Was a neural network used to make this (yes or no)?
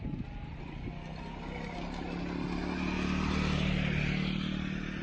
no